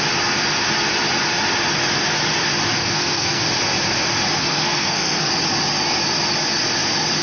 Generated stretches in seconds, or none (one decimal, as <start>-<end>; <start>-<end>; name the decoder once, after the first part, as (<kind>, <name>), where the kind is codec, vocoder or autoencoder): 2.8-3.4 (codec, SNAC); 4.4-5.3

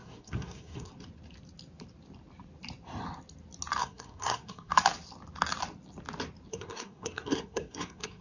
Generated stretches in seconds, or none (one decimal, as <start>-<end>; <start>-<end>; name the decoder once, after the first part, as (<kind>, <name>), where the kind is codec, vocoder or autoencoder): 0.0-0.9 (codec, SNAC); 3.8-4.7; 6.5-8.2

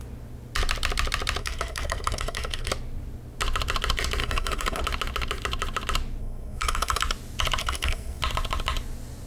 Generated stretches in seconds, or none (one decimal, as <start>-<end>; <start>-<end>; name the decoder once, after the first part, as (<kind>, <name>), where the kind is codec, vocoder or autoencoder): 1.4-2.7 (codec, SNAC); 4.2-4.8; 6.2-7.0; 7.6-8.2